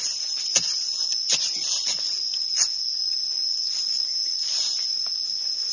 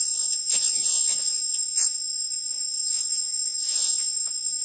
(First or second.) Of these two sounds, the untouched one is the first